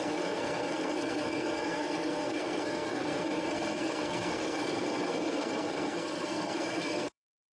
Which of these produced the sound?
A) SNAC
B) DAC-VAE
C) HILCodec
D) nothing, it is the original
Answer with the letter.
A